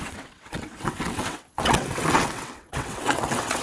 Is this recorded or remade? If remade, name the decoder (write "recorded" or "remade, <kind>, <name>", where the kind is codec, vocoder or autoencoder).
remade, vocoder, WaveNeXt